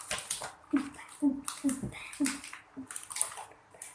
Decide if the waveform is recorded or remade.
recorded